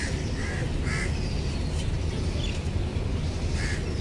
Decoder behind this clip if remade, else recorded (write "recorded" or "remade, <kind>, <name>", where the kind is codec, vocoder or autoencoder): recorded